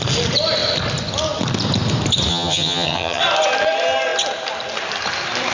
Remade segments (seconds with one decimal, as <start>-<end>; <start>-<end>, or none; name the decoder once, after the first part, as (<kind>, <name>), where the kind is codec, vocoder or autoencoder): 2.3-3.2 (vocoder, HiFi-GAN)